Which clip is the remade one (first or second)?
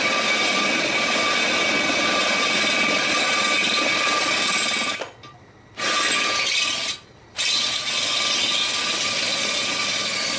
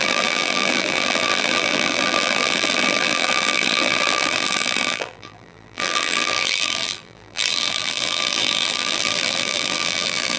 second